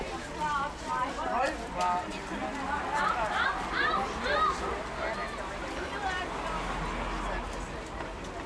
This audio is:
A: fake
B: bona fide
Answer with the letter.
B